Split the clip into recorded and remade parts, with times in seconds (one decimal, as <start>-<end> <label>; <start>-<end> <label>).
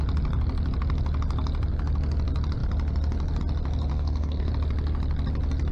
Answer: 0.0-3.9 recorded; 3.9-4.5 remade; 4.5-5.7 recorded